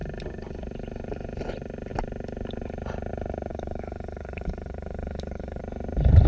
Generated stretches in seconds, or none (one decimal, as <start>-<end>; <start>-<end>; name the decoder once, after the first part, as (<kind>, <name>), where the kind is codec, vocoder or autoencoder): 3.5-5.6 (codec, DAC)